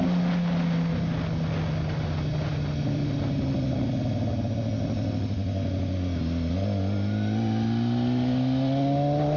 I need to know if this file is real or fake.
real